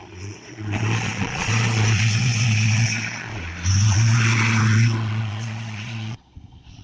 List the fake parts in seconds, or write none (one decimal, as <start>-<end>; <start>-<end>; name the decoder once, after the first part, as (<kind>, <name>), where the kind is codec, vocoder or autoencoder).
0.0-6.8 (vocoder, Vocos)